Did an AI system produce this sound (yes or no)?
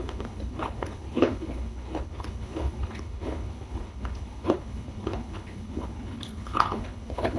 yes